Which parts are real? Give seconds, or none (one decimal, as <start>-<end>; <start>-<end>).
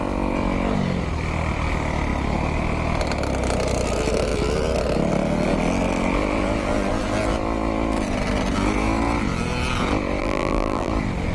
0.0-10.2; 10.9-11.3